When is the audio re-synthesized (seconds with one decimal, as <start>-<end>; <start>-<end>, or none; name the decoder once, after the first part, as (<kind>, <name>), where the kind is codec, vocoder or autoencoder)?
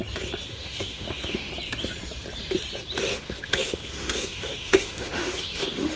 0.5-1.5 (autoencoder, DAC-VAE); 3.1-6.0